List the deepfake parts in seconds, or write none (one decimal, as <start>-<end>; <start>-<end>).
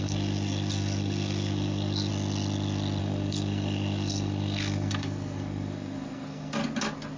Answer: 0.0-2.1; 3.0-6.6